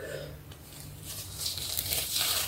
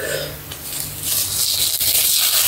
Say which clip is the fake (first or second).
first